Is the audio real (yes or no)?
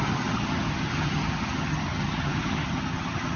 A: no